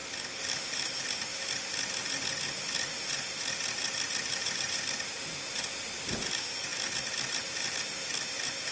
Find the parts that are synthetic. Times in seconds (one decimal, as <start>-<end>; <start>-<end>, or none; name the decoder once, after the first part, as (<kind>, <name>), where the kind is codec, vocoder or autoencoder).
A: none